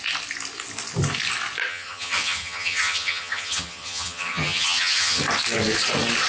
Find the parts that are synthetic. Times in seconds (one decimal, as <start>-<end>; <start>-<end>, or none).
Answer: 1.7-5.2